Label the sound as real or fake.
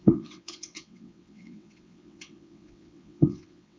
fake